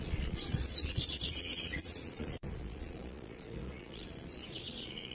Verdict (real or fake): fake